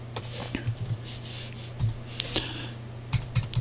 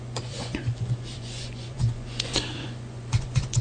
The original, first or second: first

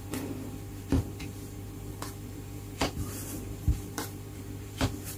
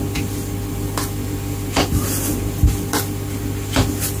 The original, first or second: second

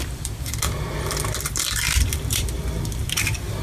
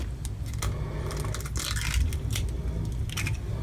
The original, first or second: second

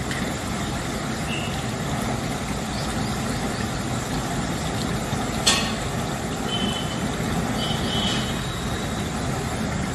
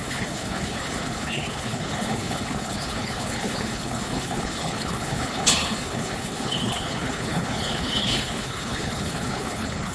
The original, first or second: first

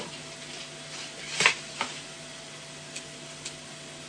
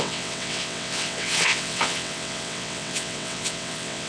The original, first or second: first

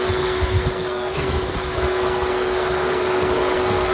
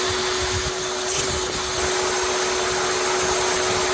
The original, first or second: second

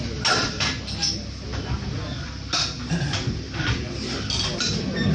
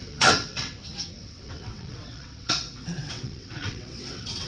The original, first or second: first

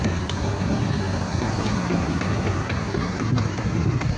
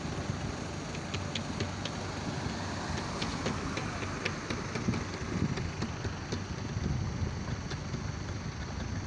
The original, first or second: second